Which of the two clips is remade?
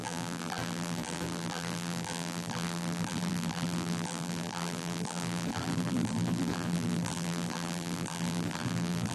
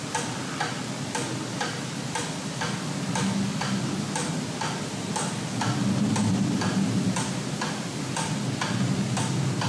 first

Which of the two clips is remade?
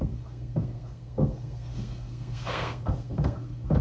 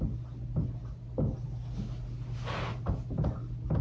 first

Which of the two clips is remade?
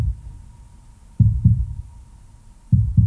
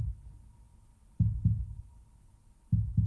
first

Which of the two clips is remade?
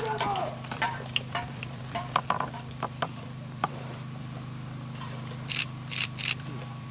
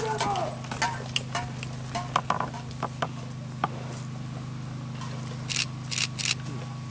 first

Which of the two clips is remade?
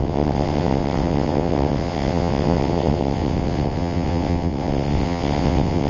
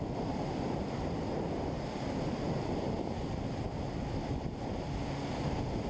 first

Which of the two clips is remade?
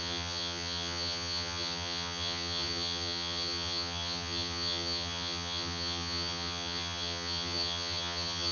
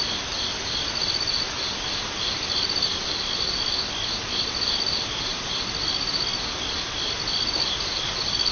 first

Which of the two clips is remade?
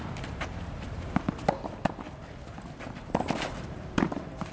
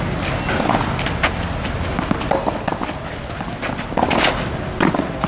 first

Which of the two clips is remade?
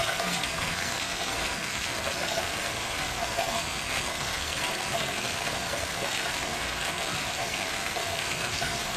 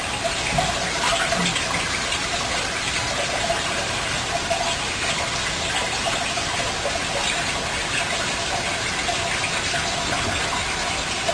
first